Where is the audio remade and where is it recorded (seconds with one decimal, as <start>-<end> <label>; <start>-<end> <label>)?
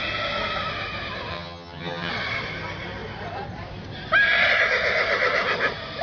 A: 0.0-1.3 recorded; 1.3-2.1 remade; 2.1-6.0 recorded